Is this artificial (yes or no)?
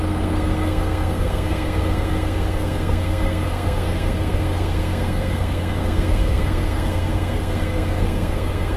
yes